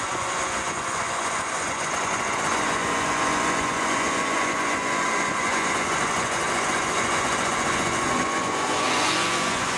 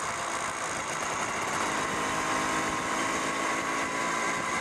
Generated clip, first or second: first